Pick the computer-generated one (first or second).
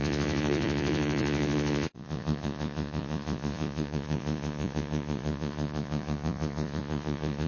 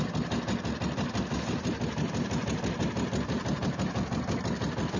first